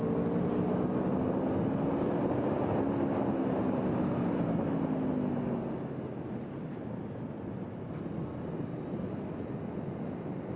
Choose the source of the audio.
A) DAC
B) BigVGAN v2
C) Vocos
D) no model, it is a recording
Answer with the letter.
D